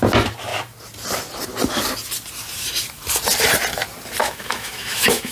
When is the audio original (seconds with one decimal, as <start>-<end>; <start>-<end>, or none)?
0.0-4.2